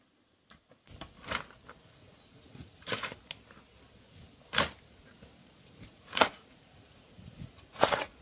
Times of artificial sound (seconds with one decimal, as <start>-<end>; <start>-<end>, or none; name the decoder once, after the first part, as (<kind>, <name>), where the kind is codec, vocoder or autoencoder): 1.8-3.2 (vocoder, Vocos); 5.4-8.2